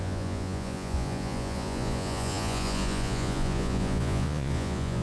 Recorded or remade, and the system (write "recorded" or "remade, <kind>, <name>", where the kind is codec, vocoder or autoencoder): remade, vocoder, Vocos